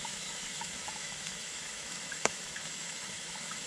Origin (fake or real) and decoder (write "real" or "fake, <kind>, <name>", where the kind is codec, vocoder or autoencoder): fake, autoencoder, DAC-VAE